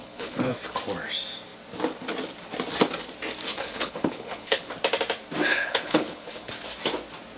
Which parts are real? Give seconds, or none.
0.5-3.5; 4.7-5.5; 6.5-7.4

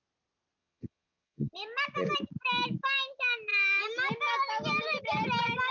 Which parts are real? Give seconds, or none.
0.0-0.6; 1.5-5.7

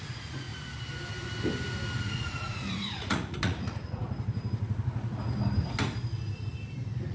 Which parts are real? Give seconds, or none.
0.5-2.0; 4.0-7.1

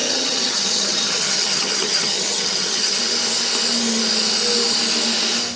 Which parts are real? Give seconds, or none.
3.0-5.6

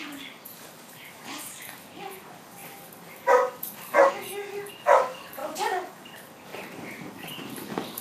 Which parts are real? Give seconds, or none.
none

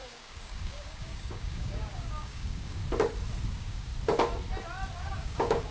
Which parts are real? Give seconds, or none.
2.8-3.5; 3.9-5.0

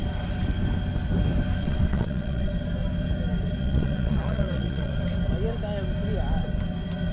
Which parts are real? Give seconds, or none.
0.0-1.6; 2.5-3.6; 5.0-7.1

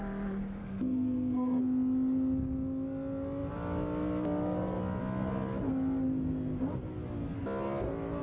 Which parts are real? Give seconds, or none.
0.0-0.6; 1.6-8.2